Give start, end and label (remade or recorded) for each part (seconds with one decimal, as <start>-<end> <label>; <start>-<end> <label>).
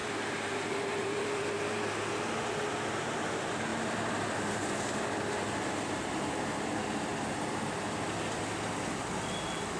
0.0-1.7 remade; 1.7-9.8 recorded